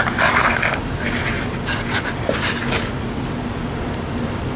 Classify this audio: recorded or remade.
recorded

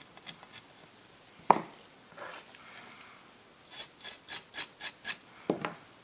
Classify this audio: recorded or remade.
recorded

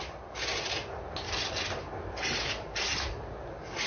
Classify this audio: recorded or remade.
recorded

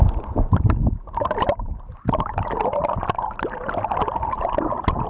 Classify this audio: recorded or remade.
recorded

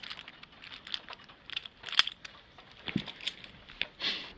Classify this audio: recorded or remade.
recorded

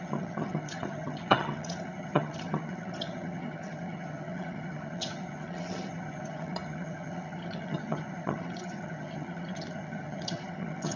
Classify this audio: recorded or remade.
remade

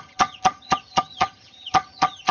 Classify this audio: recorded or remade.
remade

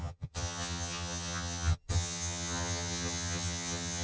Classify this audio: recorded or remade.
remade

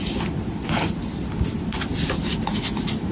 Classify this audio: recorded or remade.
recorded